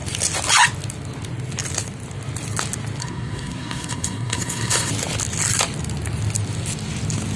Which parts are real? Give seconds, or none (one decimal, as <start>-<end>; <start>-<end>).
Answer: 0.0-3.0; 4.9-7.4